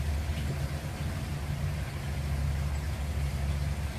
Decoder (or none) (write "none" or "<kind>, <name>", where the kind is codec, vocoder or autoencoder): none